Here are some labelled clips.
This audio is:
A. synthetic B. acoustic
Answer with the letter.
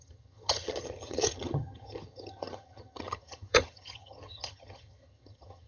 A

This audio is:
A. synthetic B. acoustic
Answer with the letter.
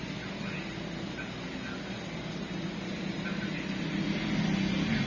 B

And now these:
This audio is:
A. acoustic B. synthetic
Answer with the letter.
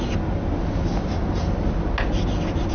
A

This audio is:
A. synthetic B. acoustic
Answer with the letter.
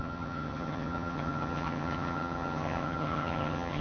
A